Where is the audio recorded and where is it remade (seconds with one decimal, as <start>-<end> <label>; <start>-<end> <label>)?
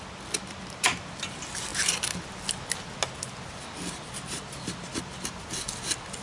0.0-6.2 recorded